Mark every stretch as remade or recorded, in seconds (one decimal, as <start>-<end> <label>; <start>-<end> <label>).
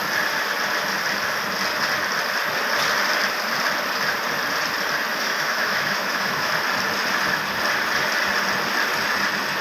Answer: 0.0-5.1 recorded; 5.1-6.5 remade; 6.5-9.6 recorded